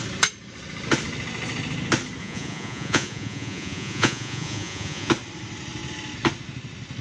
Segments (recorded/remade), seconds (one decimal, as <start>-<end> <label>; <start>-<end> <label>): 0.0-2.2 recorded; 2.2-5.1 remade; 5.1-7.0 recorded